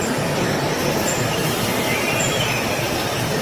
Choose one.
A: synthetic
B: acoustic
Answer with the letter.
B